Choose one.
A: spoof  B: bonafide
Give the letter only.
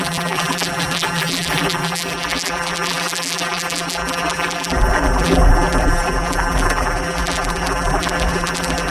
A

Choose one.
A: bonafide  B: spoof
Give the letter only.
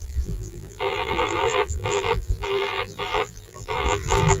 B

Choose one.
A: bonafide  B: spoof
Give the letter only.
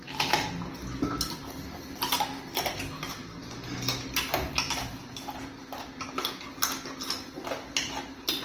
A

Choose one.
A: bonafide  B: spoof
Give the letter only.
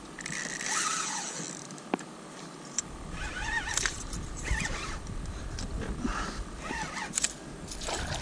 B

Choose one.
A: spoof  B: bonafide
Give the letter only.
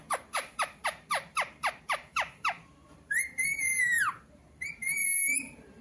A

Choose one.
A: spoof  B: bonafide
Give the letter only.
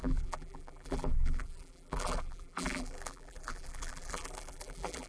A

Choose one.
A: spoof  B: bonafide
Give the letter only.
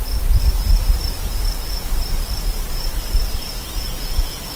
A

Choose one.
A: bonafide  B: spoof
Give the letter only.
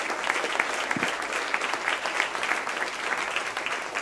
A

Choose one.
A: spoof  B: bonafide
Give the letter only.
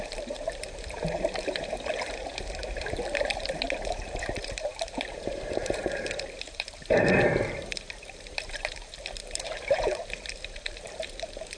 A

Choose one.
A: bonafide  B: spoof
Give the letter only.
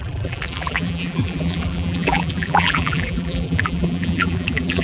B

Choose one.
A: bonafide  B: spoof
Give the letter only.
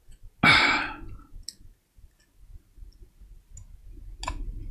A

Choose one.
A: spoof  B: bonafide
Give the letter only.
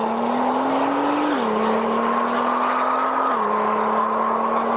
B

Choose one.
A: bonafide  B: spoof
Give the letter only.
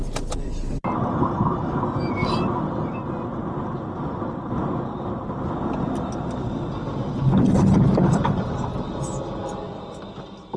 A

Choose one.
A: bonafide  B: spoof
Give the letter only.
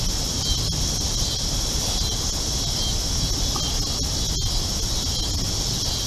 A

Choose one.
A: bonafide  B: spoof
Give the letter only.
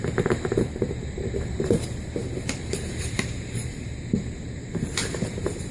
B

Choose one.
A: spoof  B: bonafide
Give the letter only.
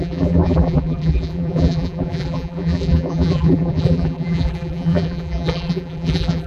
A